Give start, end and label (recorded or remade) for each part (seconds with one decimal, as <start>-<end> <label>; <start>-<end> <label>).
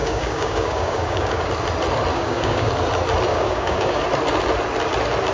0.0-1.5 remade; 1.5-2.1 recorded; 2.1-2.7 remade; 2.7-3.3 recorded; 3.3-4.0 remade; 4.0-5.3 recorded